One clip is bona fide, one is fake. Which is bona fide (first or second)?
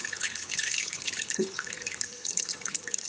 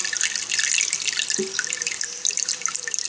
second